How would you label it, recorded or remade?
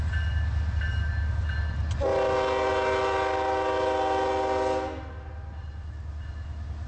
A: recorded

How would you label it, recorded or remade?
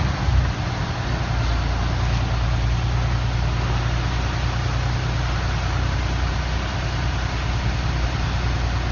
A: recorded